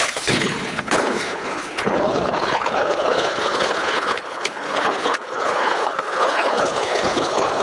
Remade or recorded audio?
remade